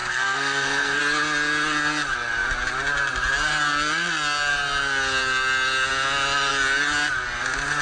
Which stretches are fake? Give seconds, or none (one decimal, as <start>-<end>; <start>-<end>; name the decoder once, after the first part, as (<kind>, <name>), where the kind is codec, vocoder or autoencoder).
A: 0.0-1.0 (codec, SNAC)